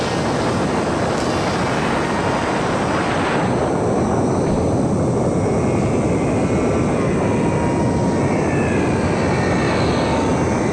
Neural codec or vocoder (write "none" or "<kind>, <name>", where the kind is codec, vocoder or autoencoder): none